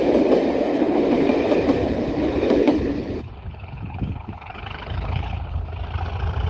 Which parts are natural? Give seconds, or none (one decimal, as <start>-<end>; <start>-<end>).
0.0-0.7; 1.3-1.8; 5.7-6.5